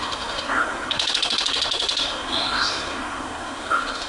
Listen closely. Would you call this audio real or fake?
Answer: fake